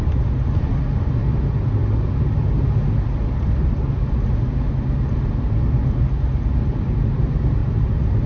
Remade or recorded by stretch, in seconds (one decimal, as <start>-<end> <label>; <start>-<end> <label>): 0.0-7.6 recorded; 7.6-8.3 remade